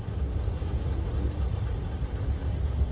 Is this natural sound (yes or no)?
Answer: yes